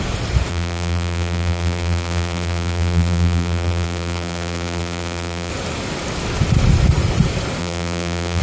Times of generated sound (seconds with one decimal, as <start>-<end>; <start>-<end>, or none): 0.5-5.5; 7.6-8.4